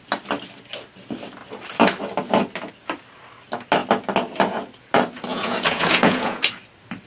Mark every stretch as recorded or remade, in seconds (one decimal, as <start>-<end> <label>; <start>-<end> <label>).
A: 0.0-5.3 recorded; 5.3-6.4 remade; 6.4-7.1 recorded